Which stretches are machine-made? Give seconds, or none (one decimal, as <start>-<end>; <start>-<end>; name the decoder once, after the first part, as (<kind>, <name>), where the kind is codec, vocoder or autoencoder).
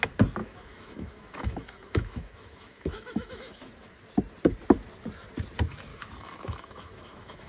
0.4-3.7 (autoencoder, DAC-VAE); 5.9-7.5